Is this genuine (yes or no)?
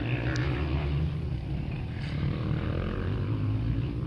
yes